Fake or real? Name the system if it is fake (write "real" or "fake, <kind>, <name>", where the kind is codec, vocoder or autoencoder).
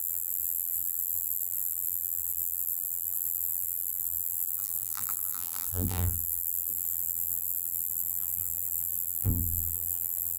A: fake, vocoder, BigVGAN v2